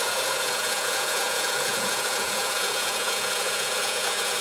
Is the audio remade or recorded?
remade